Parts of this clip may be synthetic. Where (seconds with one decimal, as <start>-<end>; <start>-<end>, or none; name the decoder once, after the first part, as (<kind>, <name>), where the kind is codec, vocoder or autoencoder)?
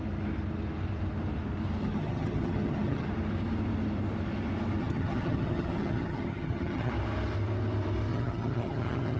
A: 1.8-3.1 (vocoder, HiFi-GAN); 4.8-6.9; 8.1-9.2